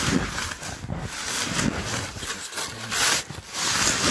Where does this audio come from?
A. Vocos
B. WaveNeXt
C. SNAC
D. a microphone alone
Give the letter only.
D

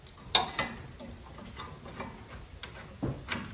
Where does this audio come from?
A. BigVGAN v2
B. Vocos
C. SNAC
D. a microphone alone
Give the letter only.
D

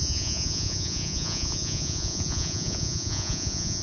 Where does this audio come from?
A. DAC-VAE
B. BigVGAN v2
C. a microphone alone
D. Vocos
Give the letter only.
D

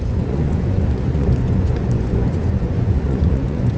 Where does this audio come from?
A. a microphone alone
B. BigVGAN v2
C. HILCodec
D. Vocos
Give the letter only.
D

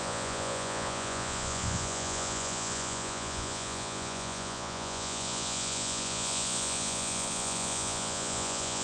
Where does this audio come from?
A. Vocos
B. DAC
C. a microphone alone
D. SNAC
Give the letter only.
A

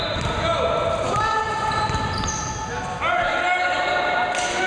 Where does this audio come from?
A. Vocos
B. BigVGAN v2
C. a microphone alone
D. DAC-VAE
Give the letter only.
C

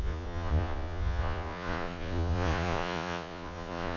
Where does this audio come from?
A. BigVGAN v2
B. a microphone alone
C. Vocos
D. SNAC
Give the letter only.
C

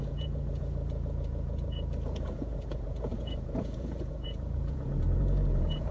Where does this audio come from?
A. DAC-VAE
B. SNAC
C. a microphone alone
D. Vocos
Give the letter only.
D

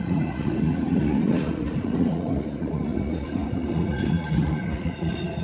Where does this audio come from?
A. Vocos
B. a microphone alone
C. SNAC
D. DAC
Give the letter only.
A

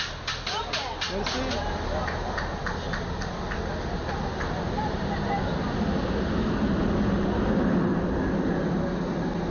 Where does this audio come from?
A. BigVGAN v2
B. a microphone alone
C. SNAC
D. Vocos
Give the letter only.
B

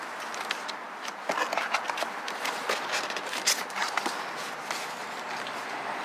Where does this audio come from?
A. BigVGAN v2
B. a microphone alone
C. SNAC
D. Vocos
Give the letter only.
B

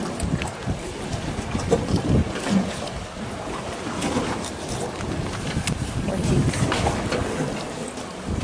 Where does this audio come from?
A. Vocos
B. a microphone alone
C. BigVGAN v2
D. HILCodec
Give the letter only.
B